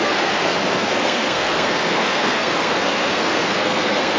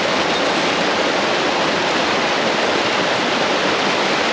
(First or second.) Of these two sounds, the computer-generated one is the first